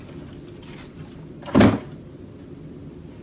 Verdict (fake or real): real